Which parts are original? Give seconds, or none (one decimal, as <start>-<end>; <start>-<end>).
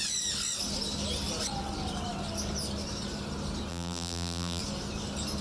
0.0-3.7; 4.6-5.4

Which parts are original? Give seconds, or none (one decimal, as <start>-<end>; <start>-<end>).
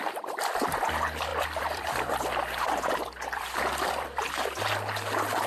0.0-1.3; 4.6-5.5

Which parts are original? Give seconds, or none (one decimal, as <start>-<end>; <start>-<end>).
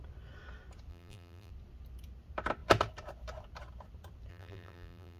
0.0-0.9; 1.5-4.3